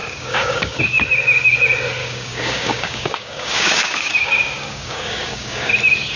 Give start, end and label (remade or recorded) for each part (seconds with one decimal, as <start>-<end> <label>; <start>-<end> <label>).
0.0-0.8 remade; 0.8-2.0 recorded; 2.0-5.7 remade; 5.7-6.2 recorded